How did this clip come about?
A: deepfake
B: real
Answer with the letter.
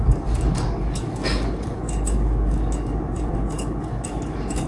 A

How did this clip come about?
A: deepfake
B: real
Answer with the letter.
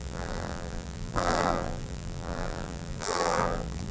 A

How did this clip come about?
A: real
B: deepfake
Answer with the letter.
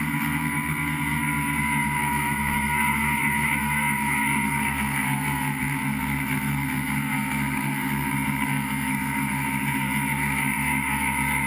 B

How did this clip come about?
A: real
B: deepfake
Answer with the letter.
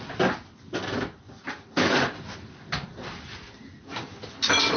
A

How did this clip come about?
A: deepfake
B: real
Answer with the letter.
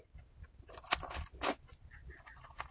B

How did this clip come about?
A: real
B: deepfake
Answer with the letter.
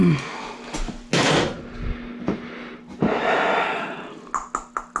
A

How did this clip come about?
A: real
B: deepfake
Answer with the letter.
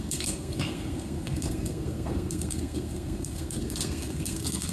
B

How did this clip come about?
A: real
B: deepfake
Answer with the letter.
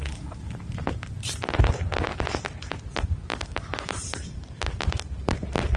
A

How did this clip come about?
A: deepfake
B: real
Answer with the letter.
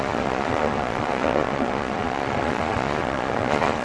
A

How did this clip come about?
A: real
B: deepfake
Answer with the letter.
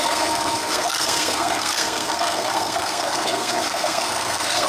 B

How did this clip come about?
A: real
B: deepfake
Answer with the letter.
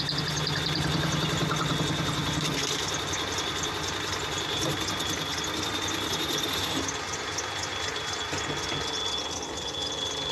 A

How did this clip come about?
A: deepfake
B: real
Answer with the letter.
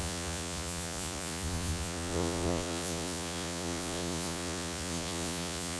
A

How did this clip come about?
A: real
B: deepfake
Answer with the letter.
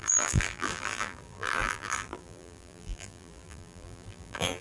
B